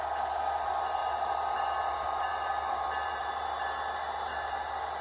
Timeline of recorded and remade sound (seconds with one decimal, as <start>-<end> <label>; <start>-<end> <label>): 0.0-5.0 recorded